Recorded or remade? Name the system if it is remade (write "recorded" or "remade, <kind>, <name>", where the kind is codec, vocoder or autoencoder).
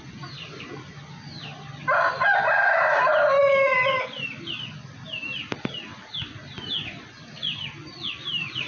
recorded